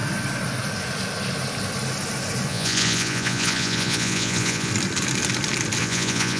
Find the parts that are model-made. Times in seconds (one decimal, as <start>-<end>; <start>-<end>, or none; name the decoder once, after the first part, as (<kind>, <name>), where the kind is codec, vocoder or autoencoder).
2.5-4.7 (vocoder, Vocos); 5.8-6.4